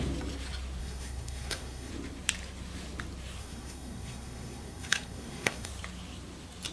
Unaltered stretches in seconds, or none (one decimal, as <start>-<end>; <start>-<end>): 0.0-0.8; 1.9-3.4; 5.7-6.7